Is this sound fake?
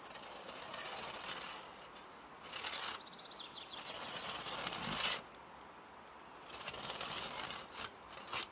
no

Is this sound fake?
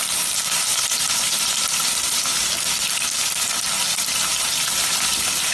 yes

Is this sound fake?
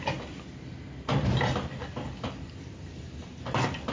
yes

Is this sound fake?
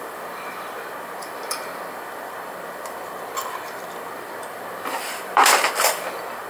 yes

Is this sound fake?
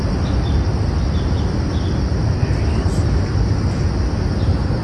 no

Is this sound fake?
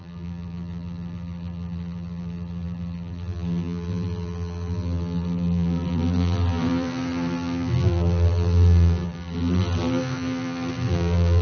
yes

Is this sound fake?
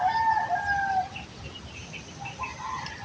yes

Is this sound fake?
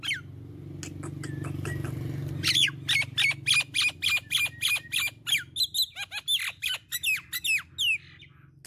no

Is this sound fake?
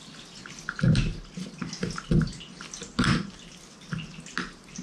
no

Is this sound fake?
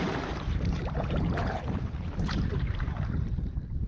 yes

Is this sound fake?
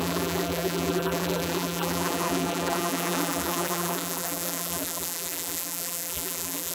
yes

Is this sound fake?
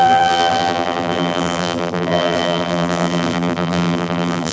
yes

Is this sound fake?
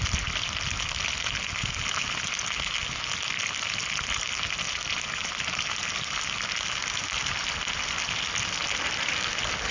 no